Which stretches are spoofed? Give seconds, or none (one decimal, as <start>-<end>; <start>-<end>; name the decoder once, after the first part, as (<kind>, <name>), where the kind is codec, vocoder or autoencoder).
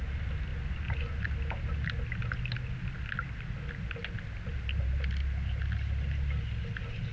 none